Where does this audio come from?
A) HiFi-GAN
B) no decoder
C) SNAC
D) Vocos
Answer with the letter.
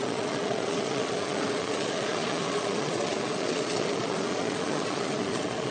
D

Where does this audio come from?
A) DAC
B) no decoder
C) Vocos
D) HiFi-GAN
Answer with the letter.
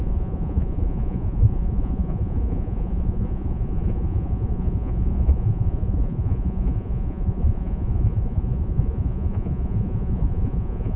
C